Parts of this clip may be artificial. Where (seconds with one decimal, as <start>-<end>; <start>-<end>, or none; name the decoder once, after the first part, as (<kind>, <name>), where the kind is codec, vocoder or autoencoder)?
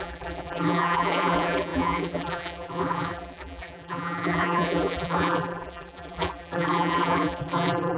0.0-8.0 (vocoder, BigVGAN v2)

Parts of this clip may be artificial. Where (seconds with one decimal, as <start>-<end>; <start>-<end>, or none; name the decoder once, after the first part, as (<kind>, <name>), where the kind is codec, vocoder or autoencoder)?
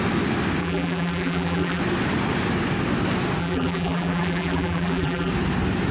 0.6-1.8 (vocoder, BigVGAN v2); 3.4-5.3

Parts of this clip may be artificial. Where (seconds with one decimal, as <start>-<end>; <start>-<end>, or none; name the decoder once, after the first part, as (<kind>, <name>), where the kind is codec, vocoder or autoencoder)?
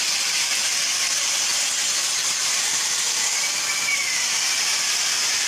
none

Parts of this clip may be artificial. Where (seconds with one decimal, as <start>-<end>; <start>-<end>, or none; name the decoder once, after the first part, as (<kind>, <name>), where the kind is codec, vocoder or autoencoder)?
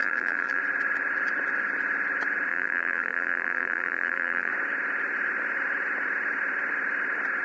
0.0-0.6 (vocoder, BigVGAN v2); 2.5-4.5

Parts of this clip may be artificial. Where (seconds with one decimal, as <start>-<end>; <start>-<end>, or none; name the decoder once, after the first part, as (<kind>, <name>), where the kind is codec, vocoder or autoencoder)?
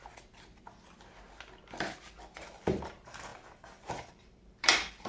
2.4-5.1 (vocoder, BigVGAN v2)